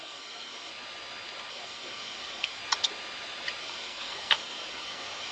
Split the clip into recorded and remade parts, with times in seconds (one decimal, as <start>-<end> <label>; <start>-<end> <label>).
0.0-0.7 remade; 0.7-1.5 recorded; 1.5-2.6 remade; 2.6-3.6 recorded; 3.6-5.3 remade